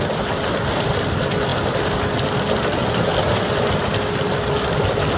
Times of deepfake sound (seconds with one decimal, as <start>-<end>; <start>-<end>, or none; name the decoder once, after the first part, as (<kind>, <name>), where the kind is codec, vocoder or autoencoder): none